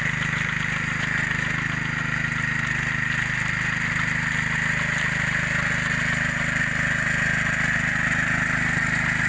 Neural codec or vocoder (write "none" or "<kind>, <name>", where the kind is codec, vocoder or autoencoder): none